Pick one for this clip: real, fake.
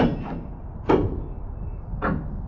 real